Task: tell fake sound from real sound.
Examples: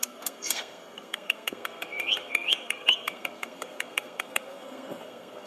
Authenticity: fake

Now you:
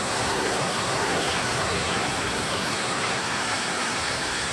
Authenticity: fake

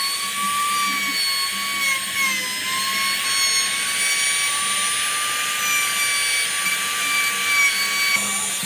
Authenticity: real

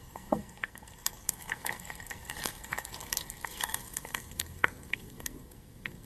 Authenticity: fake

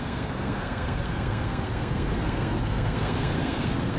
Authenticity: fake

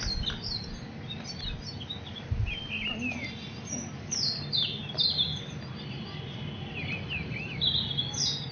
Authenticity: real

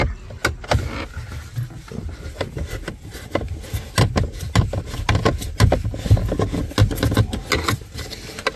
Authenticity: real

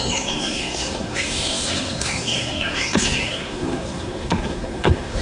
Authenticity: fake